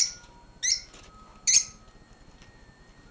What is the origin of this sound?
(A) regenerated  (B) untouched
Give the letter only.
B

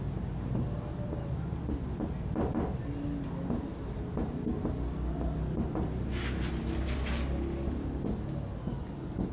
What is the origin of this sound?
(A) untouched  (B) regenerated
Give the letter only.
A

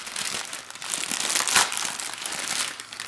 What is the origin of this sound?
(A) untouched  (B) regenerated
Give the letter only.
A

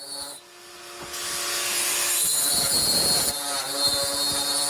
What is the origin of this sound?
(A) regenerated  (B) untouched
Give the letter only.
B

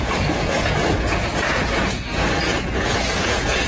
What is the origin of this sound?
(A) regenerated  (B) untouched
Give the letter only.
A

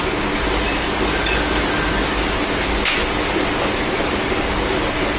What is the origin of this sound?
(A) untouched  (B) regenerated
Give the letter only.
A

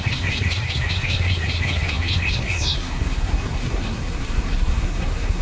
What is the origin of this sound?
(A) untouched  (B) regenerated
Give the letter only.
B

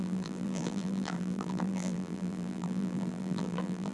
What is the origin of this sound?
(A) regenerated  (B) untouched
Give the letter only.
A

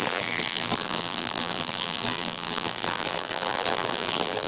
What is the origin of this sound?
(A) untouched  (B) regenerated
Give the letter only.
B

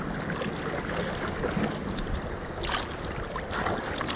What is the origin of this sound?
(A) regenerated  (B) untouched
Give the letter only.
B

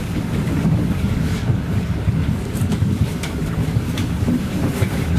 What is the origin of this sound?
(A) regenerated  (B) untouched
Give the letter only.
A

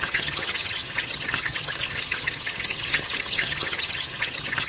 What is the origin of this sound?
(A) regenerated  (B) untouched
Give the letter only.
A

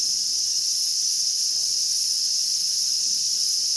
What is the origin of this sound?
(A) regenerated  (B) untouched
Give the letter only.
A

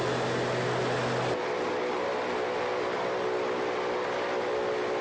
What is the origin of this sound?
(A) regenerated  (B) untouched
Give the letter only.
B